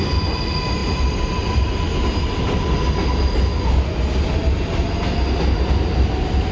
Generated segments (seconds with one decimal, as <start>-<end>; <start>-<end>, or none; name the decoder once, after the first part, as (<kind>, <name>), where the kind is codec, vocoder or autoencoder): none